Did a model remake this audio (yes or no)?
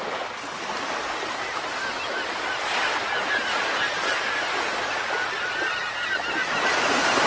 no